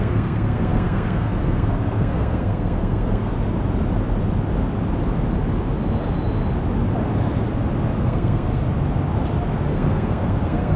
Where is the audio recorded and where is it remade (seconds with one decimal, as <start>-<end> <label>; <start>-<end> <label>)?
0.0-3.3 remade; 3.3-8.0 recorded; 8.0-8.6 remade; 8.6-9.7 recorded; 9.7-10.8 remade